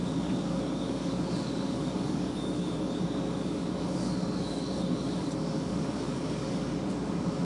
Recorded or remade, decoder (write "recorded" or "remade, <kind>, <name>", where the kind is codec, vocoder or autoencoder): remade, codec, DAC